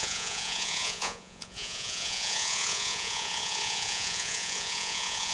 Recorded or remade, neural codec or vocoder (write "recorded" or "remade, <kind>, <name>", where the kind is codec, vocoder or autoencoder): remade, vocoder, Vocos